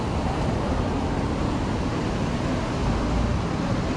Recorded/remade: recorded